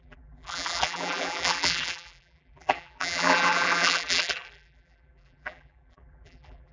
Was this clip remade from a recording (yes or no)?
yes